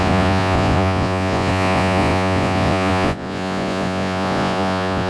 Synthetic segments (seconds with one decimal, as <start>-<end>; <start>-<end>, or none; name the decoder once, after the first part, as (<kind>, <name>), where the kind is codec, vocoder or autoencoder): 0.0-5.1 (vocoder, Vocos)

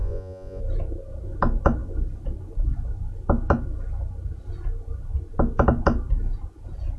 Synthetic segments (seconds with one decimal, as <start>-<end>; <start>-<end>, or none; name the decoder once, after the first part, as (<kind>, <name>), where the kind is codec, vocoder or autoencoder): 0.0-0.6 (vocoder, Vocos)

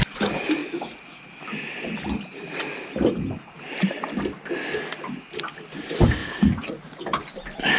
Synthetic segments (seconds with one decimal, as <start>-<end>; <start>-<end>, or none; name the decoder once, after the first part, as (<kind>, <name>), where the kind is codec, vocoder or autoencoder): 0.6-1.3 (vocoder, Vocos); 6.2-7.0

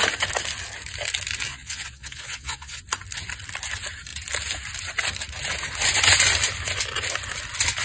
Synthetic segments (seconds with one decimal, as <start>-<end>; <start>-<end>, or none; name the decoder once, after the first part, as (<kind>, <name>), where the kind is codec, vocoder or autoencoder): 1.5-2.8 (vocoder, Vocos)

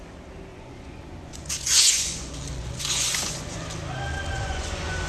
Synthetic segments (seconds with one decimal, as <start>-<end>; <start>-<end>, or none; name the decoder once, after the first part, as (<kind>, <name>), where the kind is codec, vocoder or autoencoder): 0.5-3.6 (vocoder, Vocos); 4.1-5.1

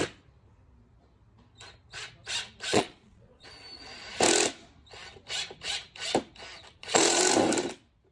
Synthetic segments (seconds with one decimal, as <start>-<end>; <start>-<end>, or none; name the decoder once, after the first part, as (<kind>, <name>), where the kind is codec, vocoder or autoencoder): 2.7-3.5 (vocoder, Vocos); 6.7-7.2

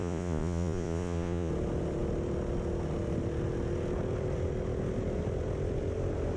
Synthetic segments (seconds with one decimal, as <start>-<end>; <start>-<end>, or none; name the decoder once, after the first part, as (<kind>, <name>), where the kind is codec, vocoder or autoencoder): 0.0-1.5 (vocoder, Vocos)

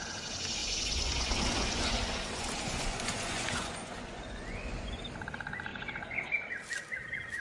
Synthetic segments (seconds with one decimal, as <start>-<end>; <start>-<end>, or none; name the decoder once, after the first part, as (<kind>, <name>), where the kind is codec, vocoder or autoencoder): 0.6-5.0 (vocoder, Vocos); 5.7-6.3